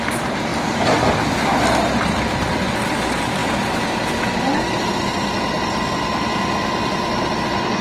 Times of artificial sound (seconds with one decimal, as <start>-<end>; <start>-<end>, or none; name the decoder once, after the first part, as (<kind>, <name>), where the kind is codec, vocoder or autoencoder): 0.5-1.2 (vocoder, BigVGAN v2)